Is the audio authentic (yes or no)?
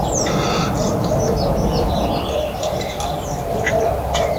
yes